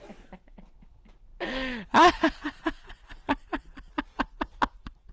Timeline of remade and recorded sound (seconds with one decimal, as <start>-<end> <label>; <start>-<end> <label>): 0.0-5.1 recorded